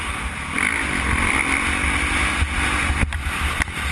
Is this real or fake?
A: real